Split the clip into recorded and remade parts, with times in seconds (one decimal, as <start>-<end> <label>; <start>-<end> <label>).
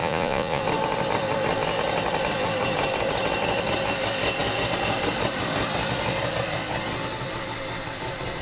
0.0-0.6 remade; 0.6-8.4 recorded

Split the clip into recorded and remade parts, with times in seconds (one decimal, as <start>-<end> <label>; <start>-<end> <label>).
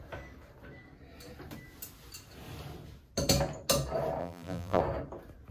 0.0-4.2 recorded; 4.2-4.8 remade; 4.8-5.5 recorded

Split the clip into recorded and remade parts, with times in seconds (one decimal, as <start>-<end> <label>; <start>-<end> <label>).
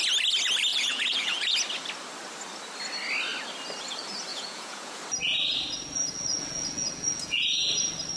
0.0-0.7 recorded; 0.7-1.5 remade; 1.5-4.3 recorded; 4.3-5.0 remade; 5.0-6.3 recorded; 6.3-7.4 remade; 7.4-8.2 recorded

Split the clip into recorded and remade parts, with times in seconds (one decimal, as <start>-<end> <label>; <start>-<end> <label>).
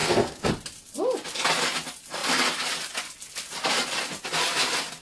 0.0-0.5 remade; 0.5-5.0 recorded